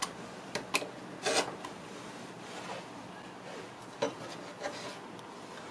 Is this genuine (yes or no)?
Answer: yes